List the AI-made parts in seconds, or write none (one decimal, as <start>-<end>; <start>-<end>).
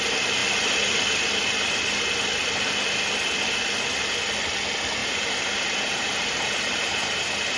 5.0-7.6